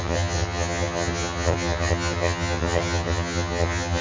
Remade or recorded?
remade